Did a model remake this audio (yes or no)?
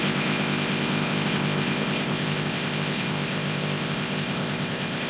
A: yes